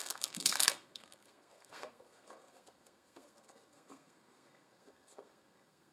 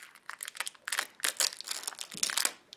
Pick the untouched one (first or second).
second